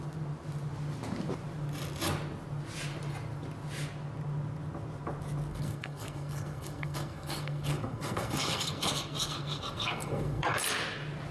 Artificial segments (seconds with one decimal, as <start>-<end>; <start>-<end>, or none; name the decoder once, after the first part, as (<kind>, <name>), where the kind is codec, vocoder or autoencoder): 5.5-10.6 (codec, SNAC)